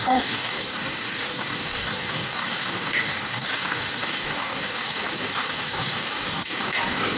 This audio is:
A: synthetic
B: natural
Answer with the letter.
A